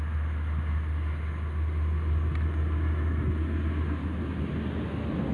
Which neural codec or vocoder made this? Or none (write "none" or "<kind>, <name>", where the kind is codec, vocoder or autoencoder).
none